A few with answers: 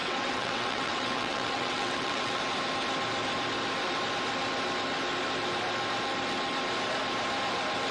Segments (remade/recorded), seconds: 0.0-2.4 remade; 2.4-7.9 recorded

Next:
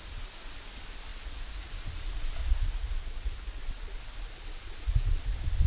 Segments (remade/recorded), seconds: 0.0-1.1 recorded; 1.1-1.7 remade; 1.7-2.4 recorded; 2.4-3.7 remade; 3.7-5.7 recorded

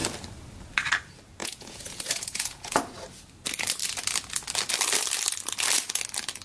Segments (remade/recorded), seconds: 0.0-1.4 recorded; 1.4-2.8 remade; 2.8-6.4 recorded

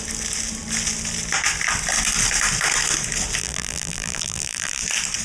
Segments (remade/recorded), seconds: 0.0-3.4 recorded; 3.4-4.8 remade; 4.8-5.2 recorded